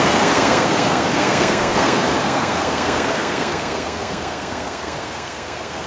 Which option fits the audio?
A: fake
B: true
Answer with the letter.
A